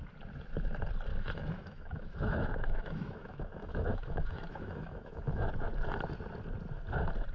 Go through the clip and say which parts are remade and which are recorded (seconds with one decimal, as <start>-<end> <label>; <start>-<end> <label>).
0.0-1.1 recorded; 1.1-5.5 remade; 5.5-7.3 recorded

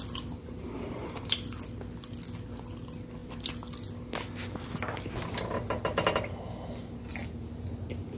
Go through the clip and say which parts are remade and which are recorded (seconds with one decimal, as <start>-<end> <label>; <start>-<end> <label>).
0.0-8.2 recorded